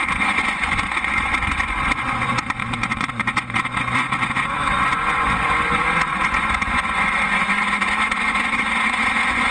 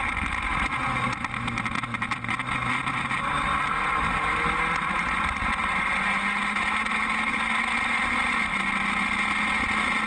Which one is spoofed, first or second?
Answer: first